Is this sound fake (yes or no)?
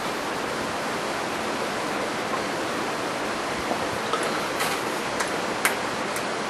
no